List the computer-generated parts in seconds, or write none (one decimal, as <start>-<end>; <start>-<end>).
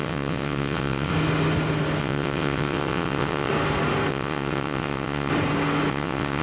0.0-1.1; 2.0-3.5; 4.1-5.3; 5.9-6.4